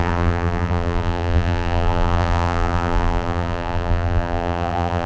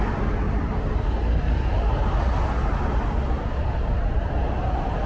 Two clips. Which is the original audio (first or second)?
second